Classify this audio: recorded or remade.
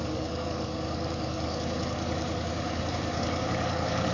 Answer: remade